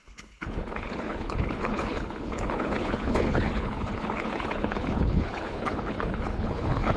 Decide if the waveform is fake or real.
fake